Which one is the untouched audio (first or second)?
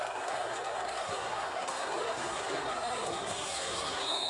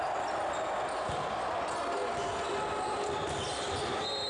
second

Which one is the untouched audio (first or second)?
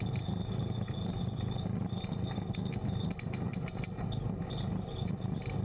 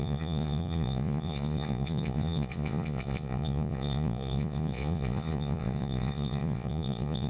first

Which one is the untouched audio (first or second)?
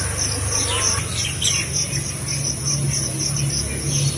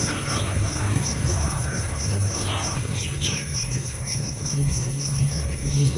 first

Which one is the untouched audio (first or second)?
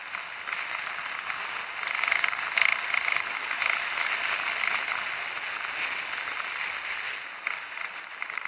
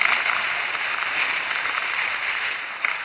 first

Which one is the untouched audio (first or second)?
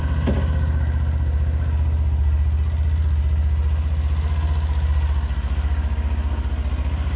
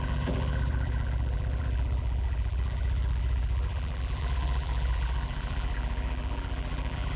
first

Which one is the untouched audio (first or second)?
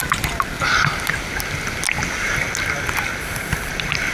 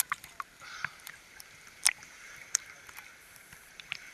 first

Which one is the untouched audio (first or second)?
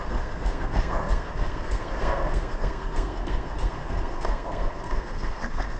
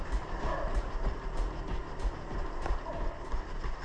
second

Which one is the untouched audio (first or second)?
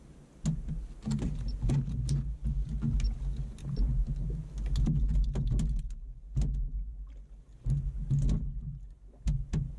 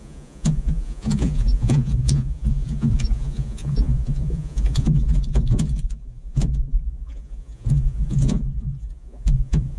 first